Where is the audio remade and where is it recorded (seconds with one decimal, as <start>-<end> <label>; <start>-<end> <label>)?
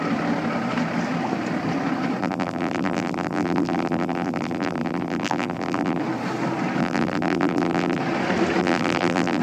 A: 0.0-2.2 recorded; 2.2-6.0 remade; 6.0-6.8 recorded; 6.8-8.0 remade; 8.0-8.6 recorded; 8.6-9.4 remade